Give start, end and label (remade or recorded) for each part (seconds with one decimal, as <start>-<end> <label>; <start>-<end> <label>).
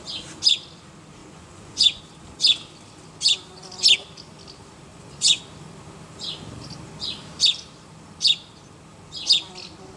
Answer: 0.0-1.2 recorded; 1.2-2.0 remade; 2.0-4.9 recorded; 4.9-5.4 remade; 5.4-10.0 recorded